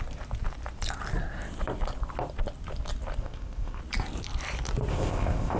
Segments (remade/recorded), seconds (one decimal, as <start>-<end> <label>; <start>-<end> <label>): 0.0-3.2 recorded; 3.2-3.8 remade; 3.8-4.9 recorded; 4.9-5.6 remade